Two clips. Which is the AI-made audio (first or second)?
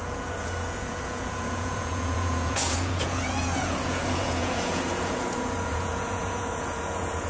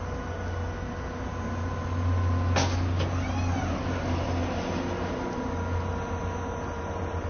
first